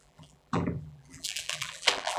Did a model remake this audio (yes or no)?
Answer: yes